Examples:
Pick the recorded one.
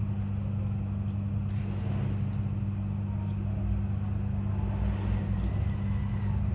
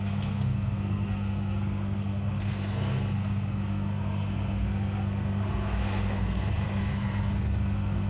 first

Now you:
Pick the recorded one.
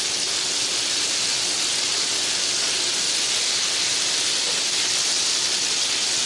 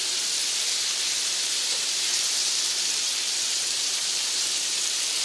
first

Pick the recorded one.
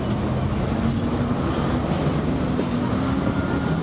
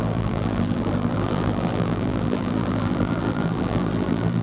first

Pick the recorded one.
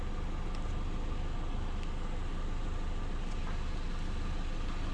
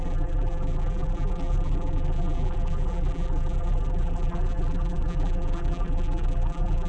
first